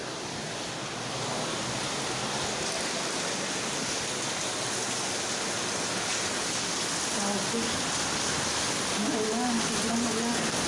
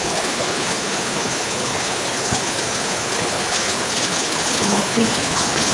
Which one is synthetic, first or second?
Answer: second